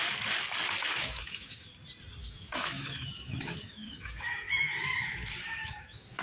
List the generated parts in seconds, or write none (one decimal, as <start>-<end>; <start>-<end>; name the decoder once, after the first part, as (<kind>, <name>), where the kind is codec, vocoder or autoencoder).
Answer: 0.8-1.7 (autoencoder, DAC-VAE); 2.2-6.2

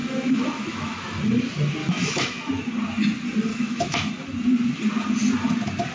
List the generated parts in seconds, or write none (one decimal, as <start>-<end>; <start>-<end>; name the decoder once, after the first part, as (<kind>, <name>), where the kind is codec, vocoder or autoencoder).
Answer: 0.0-1.2 (autoencoder, DAC-VAE); 1.8-2.5; 3.5-4.1

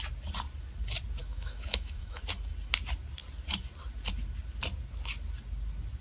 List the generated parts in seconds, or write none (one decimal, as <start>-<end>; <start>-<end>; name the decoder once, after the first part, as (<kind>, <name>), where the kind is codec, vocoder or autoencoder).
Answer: 1.2-2.2 (autoencoder, DAC-VAE)

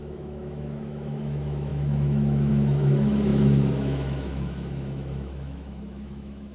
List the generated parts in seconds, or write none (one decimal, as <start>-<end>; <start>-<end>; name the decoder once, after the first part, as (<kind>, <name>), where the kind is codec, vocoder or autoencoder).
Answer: 0.0-6.5 (autoencoder, DAC-VAE)

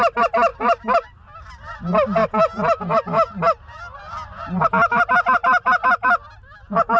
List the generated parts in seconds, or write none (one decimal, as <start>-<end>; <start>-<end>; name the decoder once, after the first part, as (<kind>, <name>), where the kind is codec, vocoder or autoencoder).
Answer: none

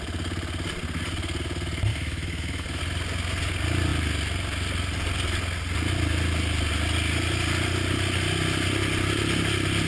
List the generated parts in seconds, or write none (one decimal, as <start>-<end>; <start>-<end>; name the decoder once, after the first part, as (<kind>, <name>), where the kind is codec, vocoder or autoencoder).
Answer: 1.9-2.8 (autoencoder, DAC-VAE)